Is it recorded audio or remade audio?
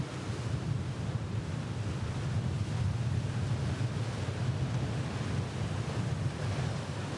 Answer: recorded